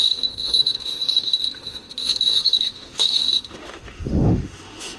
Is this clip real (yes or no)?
no